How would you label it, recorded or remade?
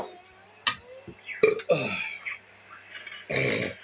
recorded